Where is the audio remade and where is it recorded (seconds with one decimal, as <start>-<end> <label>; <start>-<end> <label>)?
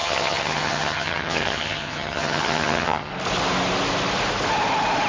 0.0-3.1 remade; 3.1-5.1 recorded